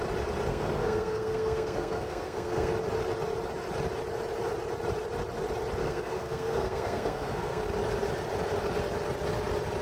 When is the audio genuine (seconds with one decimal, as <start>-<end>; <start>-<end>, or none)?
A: 0.0-0.5; 2.7-5.8; 7.6-9.8